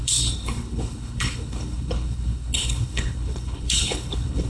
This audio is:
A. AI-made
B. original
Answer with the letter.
A